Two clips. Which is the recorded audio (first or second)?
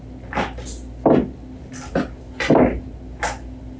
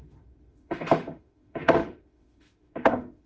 first